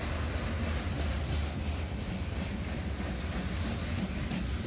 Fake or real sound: real